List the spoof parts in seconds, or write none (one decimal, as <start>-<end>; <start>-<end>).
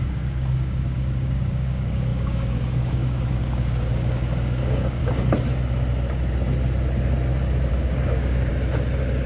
0.0-5.0; 7.7-8.5